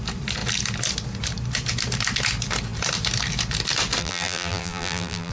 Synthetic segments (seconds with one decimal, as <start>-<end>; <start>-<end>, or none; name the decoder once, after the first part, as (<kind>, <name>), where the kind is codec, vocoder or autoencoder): 4.0-5.3 (vocoder, BigVGAN v2)